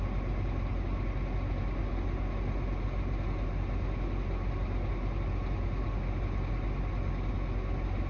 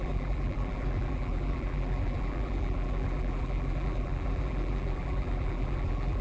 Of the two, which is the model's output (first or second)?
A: second